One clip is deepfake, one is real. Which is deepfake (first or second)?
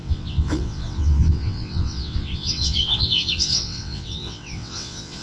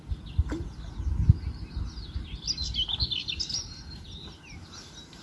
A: first